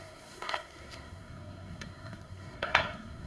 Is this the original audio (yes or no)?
no